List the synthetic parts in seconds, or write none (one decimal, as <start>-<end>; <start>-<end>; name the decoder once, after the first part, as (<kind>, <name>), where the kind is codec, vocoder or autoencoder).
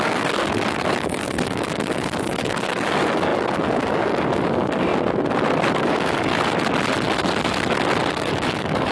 0.0-4.9 (codec, DAC); 5.7-6.3; 8.1-8.9